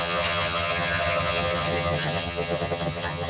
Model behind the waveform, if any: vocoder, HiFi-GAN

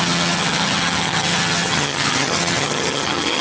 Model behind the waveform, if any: vocoder, HiFi-GAN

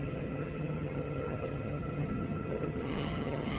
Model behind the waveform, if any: vocoder, HiFi-GAN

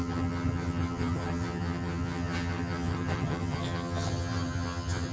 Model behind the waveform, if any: vocoder, HiFi-GAN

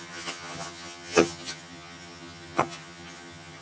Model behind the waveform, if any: vocoder, HiFi-GAN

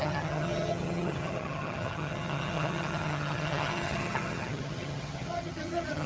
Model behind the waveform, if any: vocoder, HiFi-GAN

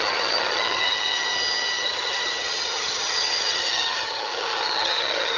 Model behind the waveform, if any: vocoder, HiFi-GAN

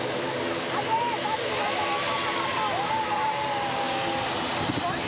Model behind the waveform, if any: none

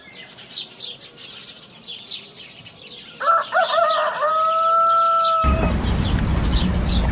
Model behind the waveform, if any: none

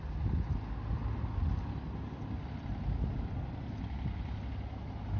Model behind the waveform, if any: none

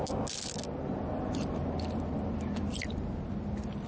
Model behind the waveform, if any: none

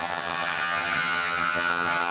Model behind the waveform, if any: vocoder, HiFi-GAN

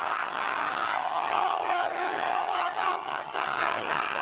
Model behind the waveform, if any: vocoder, HiFi-GAN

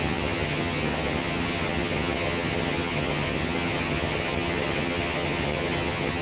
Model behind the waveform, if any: vocoder, HiFi-GAN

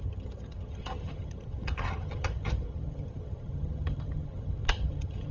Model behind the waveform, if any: vocoder, HiFi-GAN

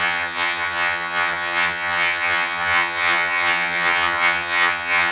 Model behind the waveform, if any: vocoder, HiFi-GAN